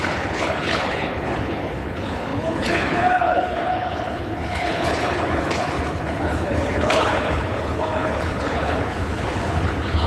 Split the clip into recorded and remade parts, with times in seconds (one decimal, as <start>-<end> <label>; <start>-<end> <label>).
0.0-10.1 remade